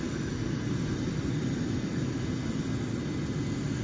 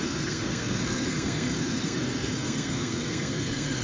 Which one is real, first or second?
first